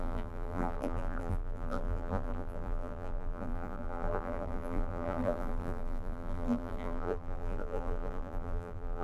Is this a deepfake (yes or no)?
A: yes